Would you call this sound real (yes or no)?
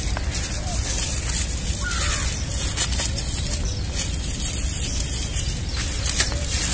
yes